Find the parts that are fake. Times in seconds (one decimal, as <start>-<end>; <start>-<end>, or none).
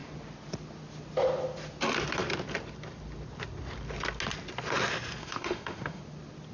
5.2-6.0